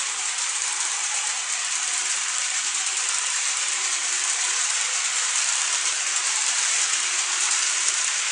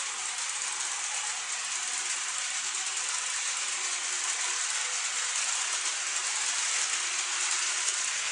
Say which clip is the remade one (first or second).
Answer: first